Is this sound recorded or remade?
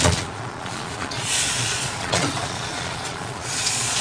remade